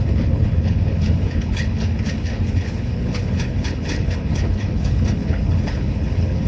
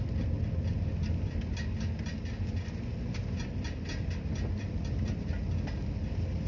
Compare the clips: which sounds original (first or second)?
second